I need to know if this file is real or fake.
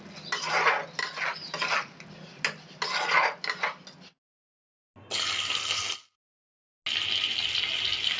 real